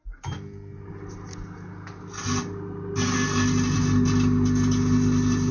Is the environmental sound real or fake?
real